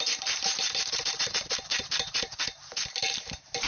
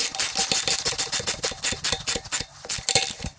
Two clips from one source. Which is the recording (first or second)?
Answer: second